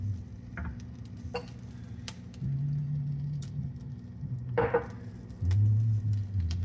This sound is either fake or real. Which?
real